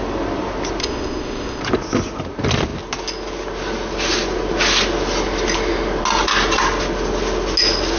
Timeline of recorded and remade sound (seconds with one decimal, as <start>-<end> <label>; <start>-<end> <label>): 0.0-0.8 recorded; 0.8-1.6 remade; 1.6-8.0 recorded